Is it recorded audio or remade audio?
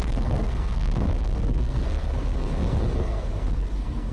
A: remade